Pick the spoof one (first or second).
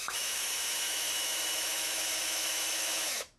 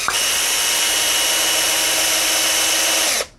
first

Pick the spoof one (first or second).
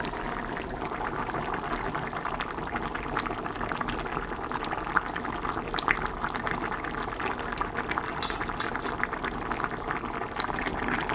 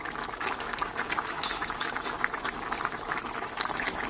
second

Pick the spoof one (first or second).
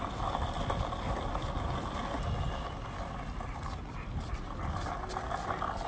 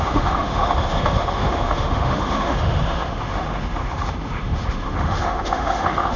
second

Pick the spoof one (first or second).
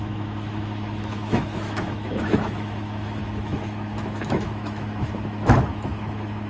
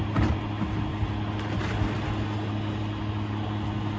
first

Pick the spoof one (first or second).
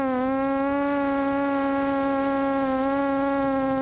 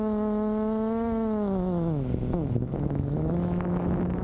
second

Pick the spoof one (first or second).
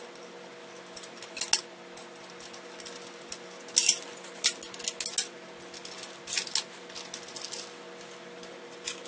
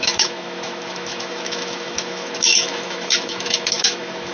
second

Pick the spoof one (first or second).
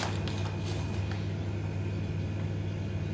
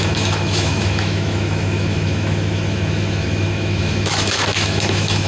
second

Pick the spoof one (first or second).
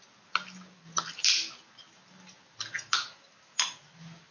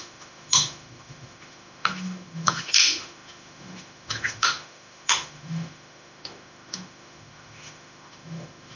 second